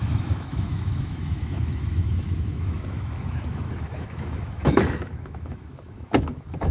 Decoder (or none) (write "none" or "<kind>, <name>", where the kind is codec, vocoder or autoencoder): autoencoder, DAC-VAE